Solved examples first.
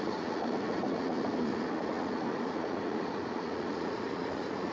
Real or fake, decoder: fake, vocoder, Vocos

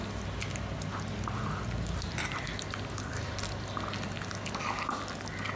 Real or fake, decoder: real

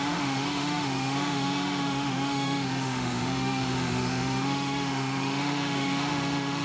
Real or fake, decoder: fake, autoencoder, DAC-VAE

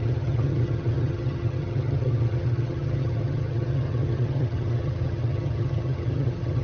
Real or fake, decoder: fake, vocoder, HiFi-GAN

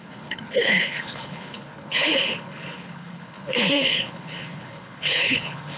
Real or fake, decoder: fake, codec, HILCodec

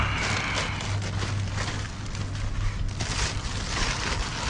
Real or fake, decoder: real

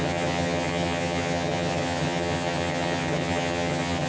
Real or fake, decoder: fake, vocoder, HiFi-GAN